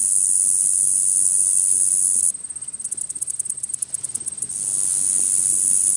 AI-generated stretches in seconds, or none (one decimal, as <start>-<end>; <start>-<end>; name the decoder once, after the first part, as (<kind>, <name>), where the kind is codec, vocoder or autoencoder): none